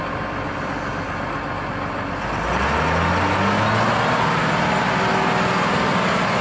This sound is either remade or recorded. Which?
recorded